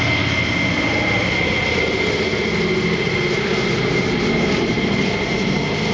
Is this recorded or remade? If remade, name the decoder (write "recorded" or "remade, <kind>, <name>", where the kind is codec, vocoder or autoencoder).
recorded